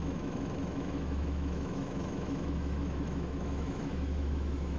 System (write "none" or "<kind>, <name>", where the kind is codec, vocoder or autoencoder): autoencoder, DAC-VAE